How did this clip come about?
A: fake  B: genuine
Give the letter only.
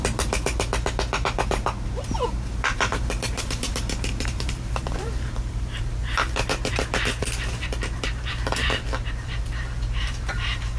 A